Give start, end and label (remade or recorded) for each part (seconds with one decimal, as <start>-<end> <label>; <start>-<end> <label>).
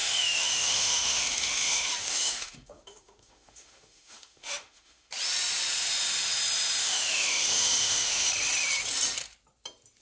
0.0-5.1 remade; 5.1-6.8 recorded; 6.8-8.3 remade; 8.3-10.0 recorded